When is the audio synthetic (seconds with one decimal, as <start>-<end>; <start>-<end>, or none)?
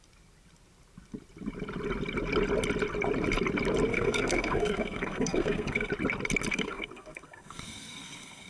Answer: 3.9-5.9; 6.5-8.5